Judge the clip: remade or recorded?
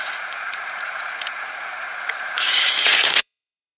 remade